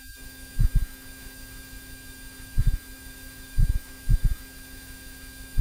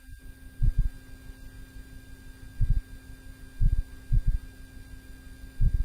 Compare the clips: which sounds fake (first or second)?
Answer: first